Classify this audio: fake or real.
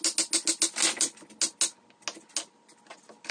real